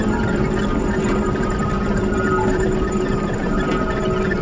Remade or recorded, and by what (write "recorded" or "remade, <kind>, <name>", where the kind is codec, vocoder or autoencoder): remade, vocoder, BigVGAN v2